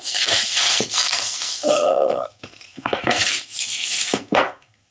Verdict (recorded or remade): remade